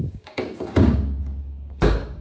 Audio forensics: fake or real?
fake